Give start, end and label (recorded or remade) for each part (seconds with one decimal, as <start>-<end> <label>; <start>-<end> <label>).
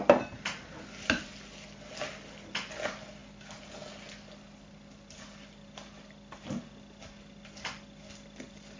0.0-8.8 recorded